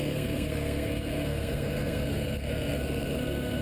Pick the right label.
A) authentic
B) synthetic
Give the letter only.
B